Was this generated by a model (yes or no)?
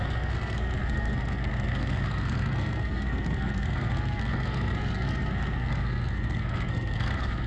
yes